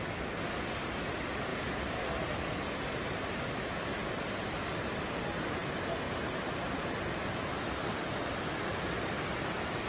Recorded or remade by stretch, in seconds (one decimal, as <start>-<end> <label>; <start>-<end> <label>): 0.0-9.9 recorded